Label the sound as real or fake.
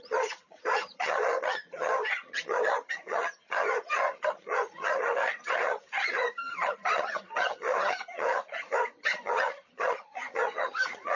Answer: fake